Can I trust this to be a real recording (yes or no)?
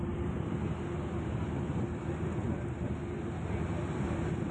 yes